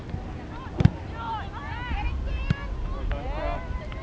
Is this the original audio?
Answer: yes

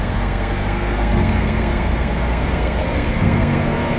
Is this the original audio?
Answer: no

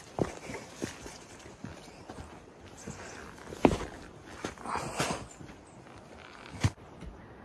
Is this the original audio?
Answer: yes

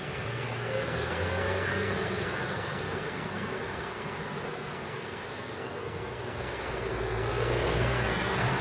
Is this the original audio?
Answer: no